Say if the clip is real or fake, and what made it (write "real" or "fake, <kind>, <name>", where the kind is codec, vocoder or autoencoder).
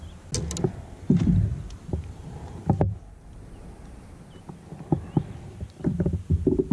real